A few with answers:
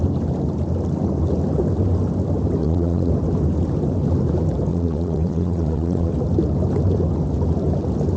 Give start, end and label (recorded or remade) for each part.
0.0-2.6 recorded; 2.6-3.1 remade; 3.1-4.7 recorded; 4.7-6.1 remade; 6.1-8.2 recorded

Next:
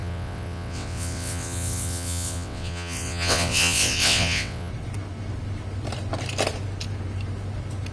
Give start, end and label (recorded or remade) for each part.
0.0-4.7 remade; 4.7-7.9 recorded